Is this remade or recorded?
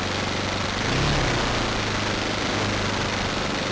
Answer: recorded